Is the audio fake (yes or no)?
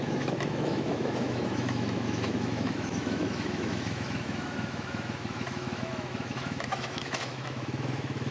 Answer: yes